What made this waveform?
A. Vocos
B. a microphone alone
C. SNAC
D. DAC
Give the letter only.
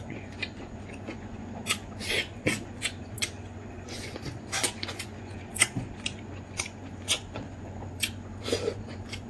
A